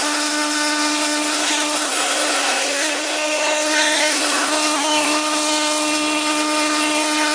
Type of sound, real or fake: fake